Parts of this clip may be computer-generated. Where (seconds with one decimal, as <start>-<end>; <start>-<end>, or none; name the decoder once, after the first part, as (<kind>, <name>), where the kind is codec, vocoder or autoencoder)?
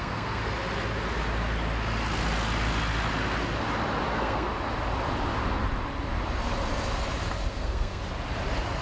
0.0-0.4 (codec, SNAC); 4.1-4.5; 7.5-8.0